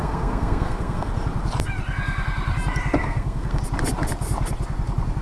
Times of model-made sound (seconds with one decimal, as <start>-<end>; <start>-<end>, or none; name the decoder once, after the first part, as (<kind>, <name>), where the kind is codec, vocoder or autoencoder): 0.0-1.1 (codec, SNAC); 3.0-3.6